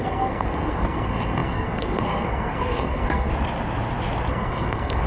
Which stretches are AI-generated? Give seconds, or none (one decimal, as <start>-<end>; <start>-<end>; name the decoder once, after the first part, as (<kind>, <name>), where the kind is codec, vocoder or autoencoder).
0.0-3.3 (codec, SNAC); 4.3-5.1